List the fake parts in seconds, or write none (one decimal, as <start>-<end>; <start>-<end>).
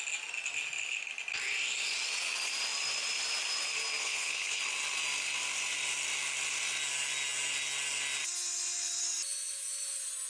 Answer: 4.0-4.6